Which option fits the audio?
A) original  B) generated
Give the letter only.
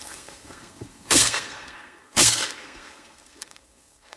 B